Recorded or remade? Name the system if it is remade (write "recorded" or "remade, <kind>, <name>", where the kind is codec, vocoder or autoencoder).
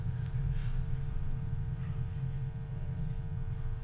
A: recorded